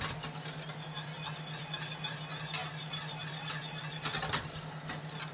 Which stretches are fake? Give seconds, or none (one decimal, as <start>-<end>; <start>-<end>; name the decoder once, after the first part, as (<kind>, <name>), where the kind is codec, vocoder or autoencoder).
none